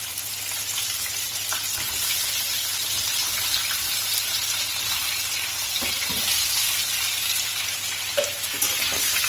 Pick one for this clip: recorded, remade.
remade